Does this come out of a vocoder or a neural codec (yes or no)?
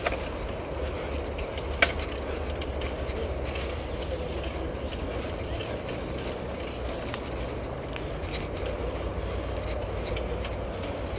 no